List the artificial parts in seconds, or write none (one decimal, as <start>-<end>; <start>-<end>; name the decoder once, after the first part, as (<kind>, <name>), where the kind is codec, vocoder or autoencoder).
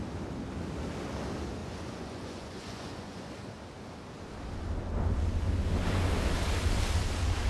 1.6-3.3 (vocoder, Vocos)